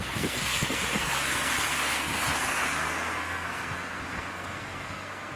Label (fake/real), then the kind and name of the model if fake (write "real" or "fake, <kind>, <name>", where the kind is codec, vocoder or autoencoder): fake, codec, SNAC